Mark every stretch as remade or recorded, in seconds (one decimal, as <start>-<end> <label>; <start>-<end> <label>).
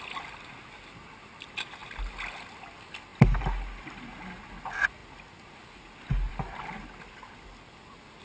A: 0.0-8.2 recorded